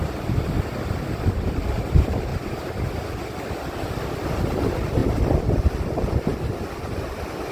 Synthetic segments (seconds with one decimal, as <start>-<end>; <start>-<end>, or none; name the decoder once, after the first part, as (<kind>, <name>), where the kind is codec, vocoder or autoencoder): 0.0-2.3 (vocoder, BigVGAN v2); 2.9-6.3; 6.8-7.5